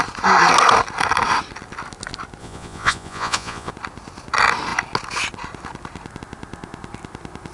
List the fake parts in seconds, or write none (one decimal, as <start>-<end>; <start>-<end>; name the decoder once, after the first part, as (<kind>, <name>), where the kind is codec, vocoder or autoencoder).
2.4-3.7 (vocoder, Vocos)